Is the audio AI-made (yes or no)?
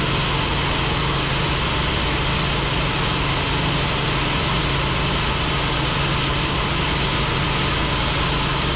no